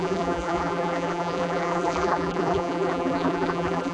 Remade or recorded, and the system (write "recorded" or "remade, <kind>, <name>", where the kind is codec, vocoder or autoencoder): remade, vocoder, BigVGAN v2